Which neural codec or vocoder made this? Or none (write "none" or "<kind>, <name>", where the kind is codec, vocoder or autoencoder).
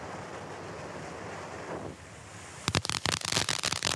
none